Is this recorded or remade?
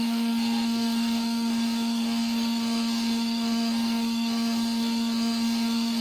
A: remade